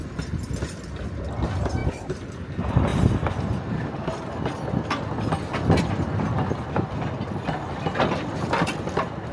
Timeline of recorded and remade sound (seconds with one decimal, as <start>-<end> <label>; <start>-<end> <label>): 0.0-1.8 recorded; 1.8-2.5 remade; 2.5-2.9 recorded; 2.9-3.8 remade; 3.8-9.3 recorded